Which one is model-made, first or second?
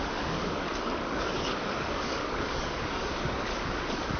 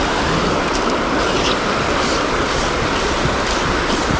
first